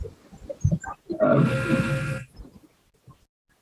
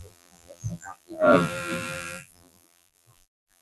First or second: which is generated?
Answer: second